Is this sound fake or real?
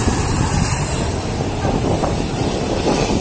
fake